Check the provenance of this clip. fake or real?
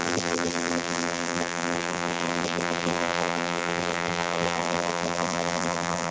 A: fake